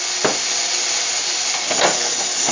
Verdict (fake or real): real